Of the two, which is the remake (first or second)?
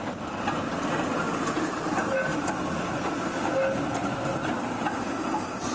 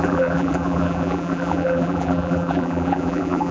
second